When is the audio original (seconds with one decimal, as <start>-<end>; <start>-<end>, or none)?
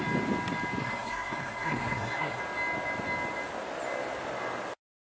0.0-0.8; 2.4-5.1